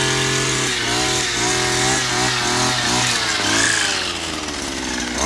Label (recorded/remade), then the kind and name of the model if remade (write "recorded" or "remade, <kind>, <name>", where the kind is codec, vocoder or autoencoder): recorded